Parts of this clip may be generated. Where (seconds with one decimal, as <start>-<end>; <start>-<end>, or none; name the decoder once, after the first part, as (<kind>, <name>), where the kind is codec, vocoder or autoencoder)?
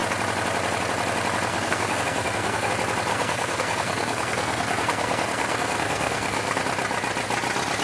1.5-2.7 (codec, SNAC); 3.1-6.6